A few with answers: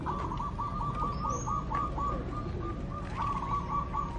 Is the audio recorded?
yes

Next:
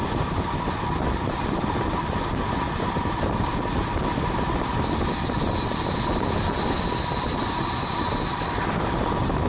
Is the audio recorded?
yes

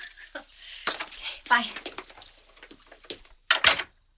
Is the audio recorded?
yes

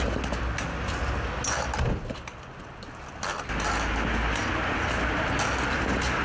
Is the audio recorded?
yes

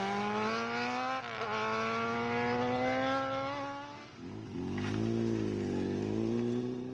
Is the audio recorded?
yes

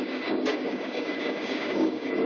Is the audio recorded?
no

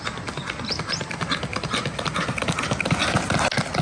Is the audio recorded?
yes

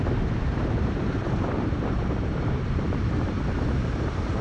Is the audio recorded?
no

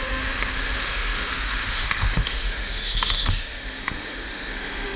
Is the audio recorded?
no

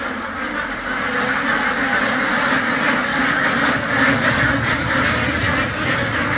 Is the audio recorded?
yes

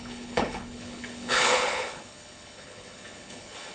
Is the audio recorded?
no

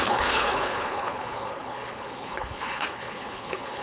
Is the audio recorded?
no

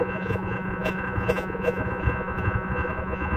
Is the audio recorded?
no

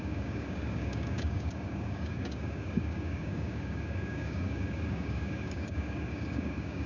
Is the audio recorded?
no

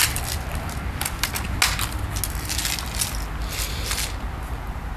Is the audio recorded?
yes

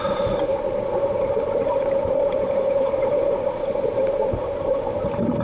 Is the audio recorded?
no